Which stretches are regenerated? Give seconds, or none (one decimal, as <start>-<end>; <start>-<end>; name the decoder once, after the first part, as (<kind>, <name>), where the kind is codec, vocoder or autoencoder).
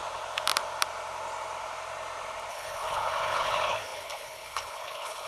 2.5-5.3 (codec, HILCodec)